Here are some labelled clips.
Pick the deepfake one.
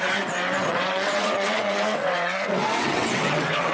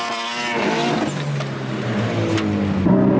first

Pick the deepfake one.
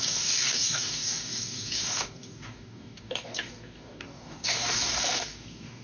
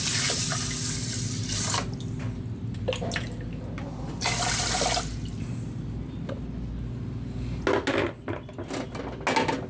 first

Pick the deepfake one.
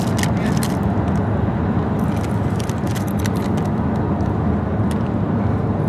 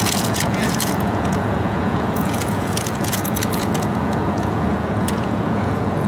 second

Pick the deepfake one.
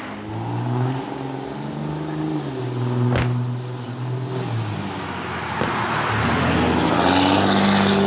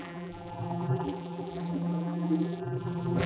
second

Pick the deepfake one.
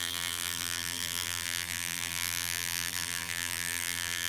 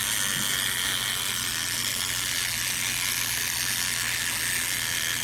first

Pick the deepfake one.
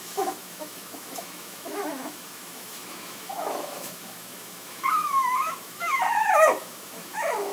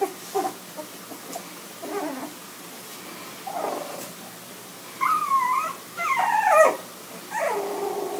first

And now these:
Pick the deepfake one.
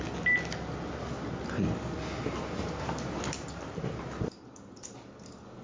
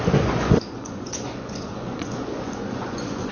second